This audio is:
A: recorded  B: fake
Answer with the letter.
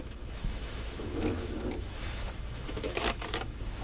B